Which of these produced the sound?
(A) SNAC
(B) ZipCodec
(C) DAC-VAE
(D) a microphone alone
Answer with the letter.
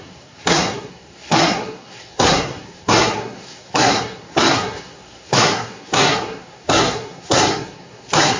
A